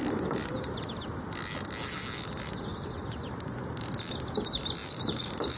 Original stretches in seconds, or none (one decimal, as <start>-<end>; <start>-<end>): 0.0-2.7; 3.6-4.8